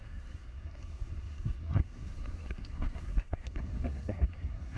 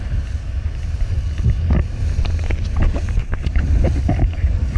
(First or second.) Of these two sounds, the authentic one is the second